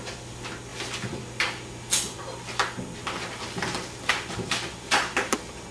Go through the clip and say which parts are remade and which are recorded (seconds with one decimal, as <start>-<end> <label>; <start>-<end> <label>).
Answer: 0.0-5.7 recorded